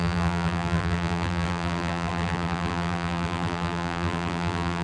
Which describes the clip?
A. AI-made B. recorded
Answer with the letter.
A